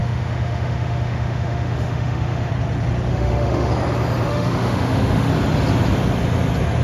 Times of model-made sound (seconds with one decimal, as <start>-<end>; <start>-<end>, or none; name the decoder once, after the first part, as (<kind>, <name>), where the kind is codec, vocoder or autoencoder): 0.0-2.5 (autoencoder, DAC-VAE); 3.1-3.7; 4.3-5.3